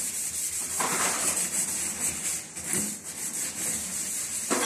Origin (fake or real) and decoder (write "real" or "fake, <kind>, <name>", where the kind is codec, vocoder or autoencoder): real